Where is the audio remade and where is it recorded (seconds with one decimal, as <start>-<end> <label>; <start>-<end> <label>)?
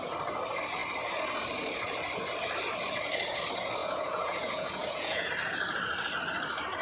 0.0-3.8 recorded; 3.8-5.3 remade; 5.3-6.8 recorded